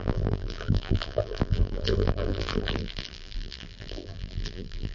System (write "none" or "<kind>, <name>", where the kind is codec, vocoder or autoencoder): vocoder, BigVGAN v2